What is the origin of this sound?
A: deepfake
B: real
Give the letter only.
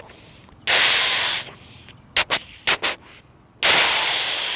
B